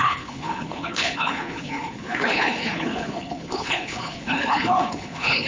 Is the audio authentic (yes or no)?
no